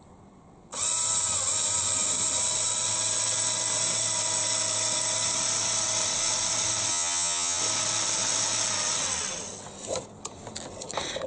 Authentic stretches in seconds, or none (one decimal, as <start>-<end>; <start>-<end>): 0.0-6.9; 7.6-11.3